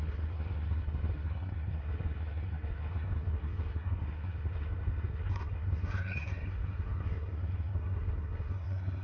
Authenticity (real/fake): fake